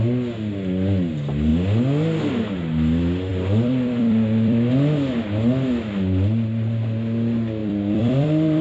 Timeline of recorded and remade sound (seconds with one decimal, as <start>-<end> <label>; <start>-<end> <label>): 0.0-3.3 recorded; 3.3-4.7 remade; 4.7-7.6 recorded; 7.6-8.6 remade